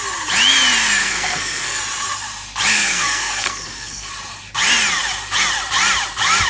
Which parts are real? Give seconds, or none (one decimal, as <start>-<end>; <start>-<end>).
0.0-1.0; 1.8-2.7; 4.1-6.5